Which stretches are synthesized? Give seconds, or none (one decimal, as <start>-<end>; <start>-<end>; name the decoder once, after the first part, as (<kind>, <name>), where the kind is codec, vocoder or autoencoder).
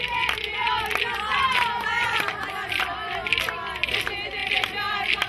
3.2-3.8 (vocoder, BigVGAN v2)